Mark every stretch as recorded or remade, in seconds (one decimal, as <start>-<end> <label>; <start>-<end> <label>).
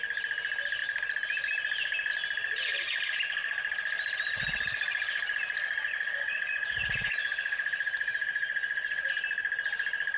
0.0-5.9 recorded; 5.9-9.1 remade; 9.1-10.2 recorded